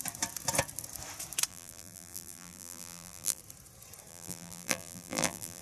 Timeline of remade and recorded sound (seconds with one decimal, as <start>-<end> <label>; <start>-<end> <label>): 0.0-1.5 recorded; 1.5-3.4 remade; 3.4-4.1 recorded; 4.1-5.6 remade